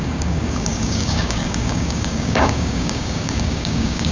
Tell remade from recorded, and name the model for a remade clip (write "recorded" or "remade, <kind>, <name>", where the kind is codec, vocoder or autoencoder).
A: remade, codec, DAC